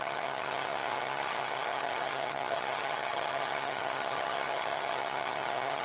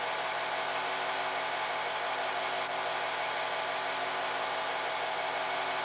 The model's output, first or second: first